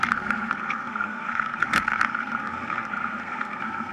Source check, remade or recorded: remade